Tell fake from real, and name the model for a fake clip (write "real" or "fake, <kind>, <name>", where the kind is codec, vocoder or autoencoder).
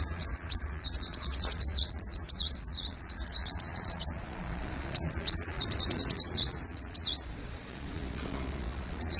fake, vocoder, Vocos